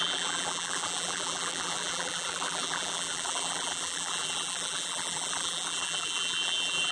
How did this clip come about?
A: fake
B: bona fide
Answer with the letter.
A